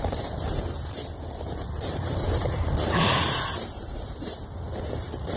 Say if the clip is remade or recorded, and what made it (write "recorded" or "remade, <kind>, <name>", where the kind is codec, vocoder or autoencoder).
remade, vocoder, BigVGAN v2